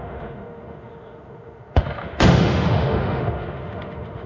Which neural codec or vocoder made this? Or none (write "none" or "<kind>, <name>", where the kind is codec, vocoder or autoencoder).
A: autoencoder, DAC-VAE